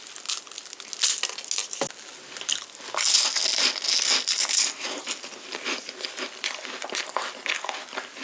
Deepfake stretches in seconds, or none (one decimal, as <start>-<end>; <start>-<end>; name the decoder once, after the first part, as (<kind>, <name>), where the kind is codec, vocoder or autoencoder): none